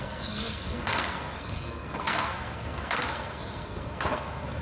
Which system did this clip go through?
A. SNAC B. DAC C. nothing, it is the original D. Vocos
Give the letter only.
A